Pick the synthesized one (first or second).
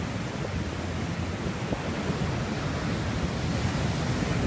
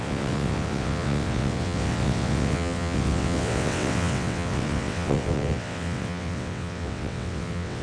second